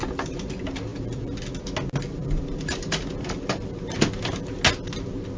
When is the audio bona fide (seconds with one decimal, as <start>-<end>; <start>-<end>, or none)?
0.0-0.9; 1.4-2.2; 4.3-5.4